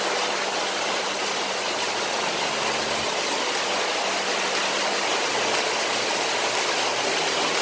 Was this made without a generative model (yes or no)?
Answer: yes